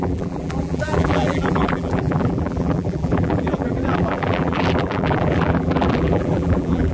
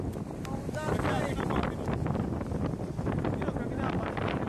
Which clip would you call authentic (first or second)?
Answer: second